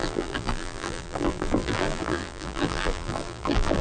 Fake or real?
fake